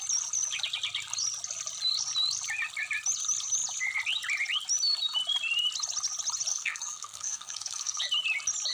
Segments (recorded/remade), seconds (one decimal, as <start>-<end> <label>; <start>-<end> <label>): 0.0-6.5 recorded; 6.5-8.0 remade; 8.0-8.7 recorded